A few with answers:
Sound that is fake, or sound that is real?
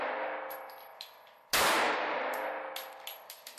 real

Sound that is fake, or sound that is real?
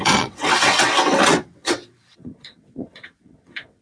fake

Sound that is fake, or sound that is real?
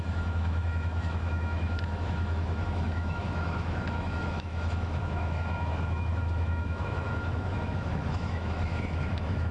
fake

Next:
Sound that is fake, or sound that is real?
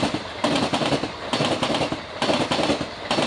real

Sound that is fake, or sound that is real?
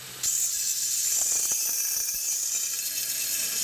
real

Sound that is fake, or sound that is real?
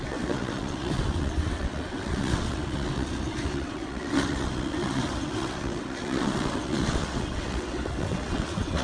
fake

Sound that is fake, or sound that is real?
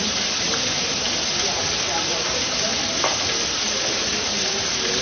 real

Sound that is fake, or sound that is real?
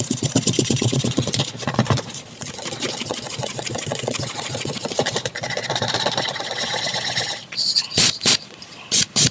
fake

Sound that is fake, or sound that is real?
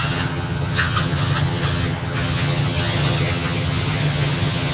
fake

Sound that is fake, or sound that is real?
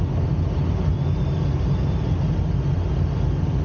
real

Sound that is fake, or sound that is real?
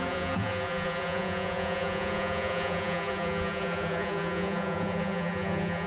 fake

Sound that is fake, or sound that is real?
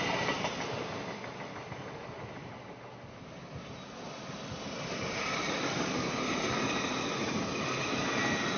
real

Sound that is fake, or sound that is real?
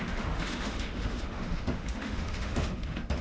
fake